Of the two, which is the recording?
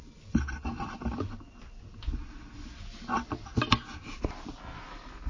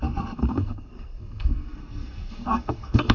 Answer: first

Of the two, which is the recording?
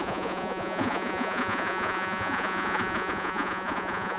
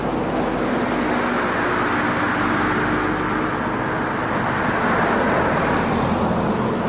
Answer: second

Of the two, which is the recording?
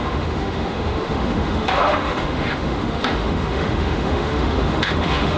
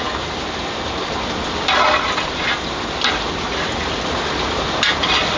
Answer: second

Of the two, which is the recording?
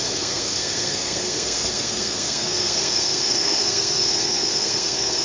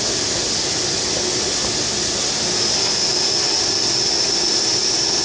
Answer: second